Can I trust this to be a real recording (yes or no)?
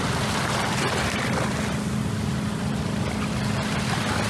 yes